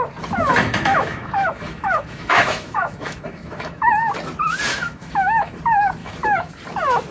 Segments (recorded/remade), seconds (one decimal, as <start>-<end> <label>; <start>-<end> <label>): 0.0-0.5 recorded; 0.5-3.9 remade; 3.9-4.7 recorded; 4.7-5.6 remade; 5.6-6.0 recorded; 6.0-6.5 remade; 6.5-7.1 recorded